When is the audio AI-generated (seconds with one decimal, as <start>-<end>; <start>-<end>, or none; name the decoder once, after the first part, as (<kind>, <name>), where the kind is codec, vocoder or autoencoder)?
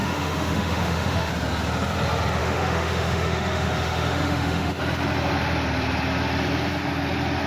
0.0-1.3 (autoencoder, DAC-VAE); 2.4-4.8